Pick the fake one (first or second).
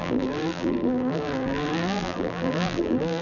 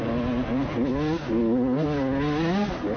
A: first